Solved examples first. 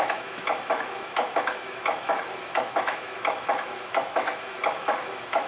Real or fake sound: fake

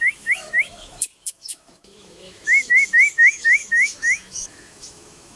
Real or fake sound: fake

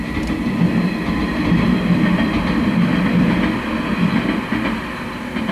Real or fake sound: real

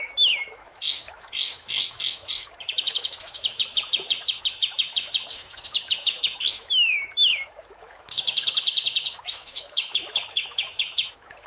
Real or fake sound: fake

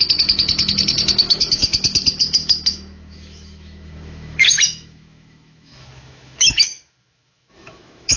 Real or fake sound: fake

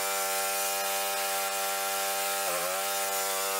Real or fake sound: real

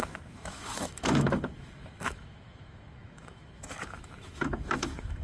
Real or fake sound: fake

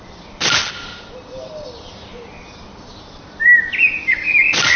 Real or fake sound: real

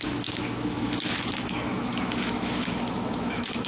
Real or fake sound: fake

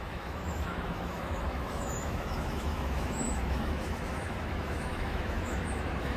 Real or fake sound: fake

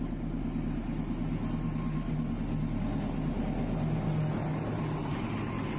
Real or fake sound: real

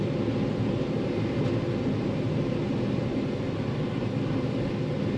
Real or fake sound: real